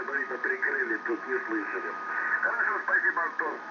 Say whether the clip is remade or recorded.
remade